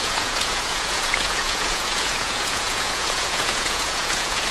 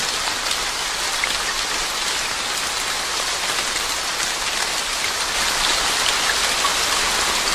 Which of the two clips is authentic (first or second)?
second